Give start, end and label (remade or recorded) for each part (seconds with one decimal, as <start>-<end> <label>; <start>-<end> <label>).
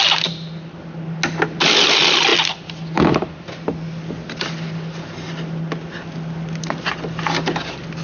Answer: 0.0-8.0 recorded